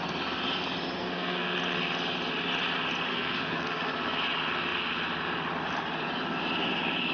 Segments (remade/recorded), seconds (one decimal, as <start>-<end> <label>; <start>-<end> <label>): 0.0-1.0 recorded; 1.0-1.6 remade; 1.6-3.1 recorded; 3.1-3.9 remade; 3.9-7.1 recorded